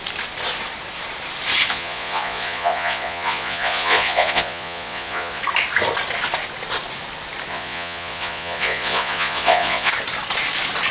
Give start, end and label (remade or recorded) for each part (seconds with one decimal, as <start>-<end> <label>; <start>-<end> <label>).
0.0-1.7 recorded; 1.7-5.4 remade; 5.4-7.5 recorded; 7.5-9.9 remade; 9.9-10.9 recorded